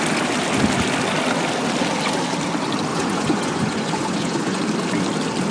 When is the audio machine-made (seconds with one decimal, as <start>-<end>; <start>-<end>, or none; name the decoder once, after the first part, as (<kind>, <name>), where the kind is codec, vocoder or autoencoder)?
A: 2.9-4.6 (vocoder, Vocos)